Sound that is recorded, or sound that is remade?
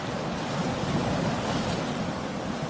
recorded